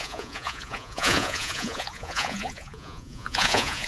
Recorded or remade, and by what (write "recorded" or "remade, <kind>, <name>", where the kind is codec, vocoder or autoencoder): remade, vocoder, Vocos